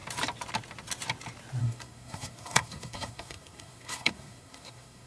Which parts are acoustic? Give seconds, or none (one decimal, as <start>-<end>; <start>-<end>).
0.0-1.6